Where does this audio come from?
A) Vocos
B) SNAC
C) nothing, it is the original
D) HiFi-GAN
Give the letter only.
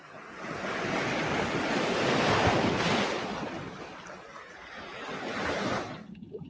C